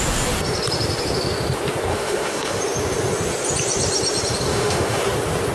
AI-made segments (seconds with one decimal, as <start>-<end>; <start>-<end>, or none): 1.9-2.6; 4.5-5.0